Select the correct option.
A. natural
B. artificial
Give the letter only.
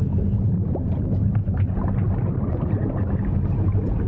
A